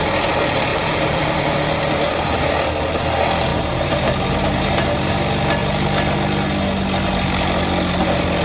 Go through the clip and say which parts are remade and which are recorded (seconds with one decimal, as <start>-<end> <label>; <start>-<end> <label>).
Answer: 0.0-0.7 recorded; 0.7-2.5 remade; 2.5-3.5 recorded; 3.5-5.1 remade; 5.1-8.4 recorded